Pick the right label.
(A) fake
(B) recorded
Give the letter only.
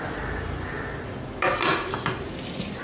B